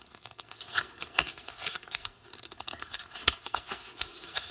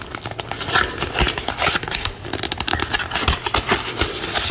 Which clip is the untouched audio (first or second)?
second